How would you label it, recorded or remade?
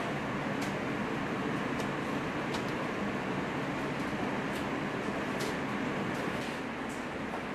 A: recorded